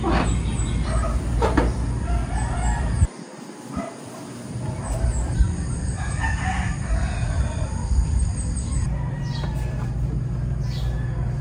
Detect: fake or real real